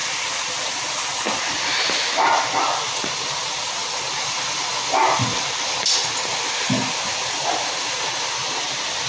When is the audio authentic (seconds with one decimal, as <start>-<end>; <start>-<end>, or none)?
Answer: 0.0-9.1